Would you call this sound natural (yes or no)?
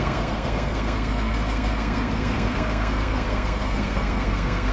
no